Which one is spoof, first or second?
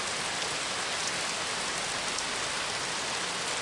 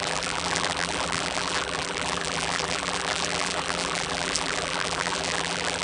second